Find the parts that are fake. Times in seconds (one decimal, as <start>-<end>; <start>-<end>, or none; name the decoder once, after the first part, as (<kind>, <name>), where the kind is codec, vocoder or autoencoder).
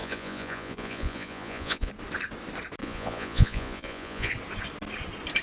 0.0-1.9 (vocoder, Vocos); 2.8-4.3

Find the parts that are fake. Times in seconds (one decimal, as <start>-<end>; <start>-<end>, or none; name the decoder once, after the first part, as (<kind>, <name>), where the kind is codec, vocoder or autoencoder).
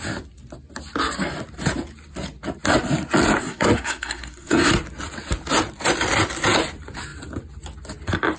3.4-4.7 (codec, SNAC)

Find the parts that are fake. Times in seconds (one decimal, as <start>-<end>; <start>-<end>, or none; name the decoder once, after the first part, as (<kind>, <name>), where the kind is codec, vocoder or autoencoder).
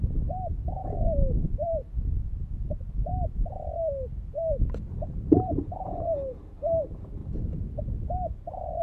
0.0-0.8 (vocoder, BigVGAN v2); 1.4-3.1; 5.1-8.8